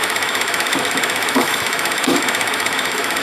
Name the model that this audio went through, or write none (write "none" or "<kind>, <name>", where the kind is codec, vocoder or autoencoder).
autoencoder, DAC-VAE